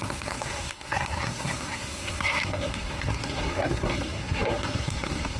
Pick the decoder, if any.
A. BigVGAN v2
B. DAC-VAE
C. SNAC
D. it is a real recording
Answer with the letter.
C